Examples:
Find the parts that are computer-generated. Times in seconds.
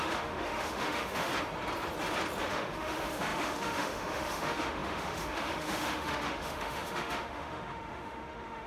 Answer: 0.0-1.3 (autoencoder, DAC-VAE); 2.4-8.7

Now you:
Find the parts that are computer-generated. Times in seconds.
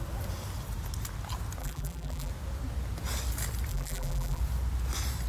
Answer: 1.6-2.3 (vocoder, BigVGAN v2); 3.7-4.4